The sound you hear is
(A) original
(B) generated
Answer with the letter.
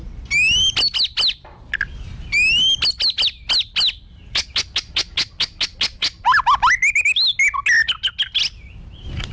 A